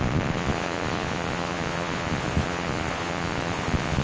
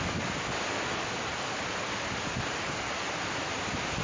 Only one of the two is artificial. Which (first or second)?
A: first